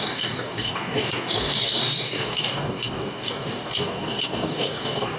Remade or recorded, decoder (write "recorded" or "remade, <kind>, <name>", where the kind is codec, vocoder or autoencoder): remade, codec, DAC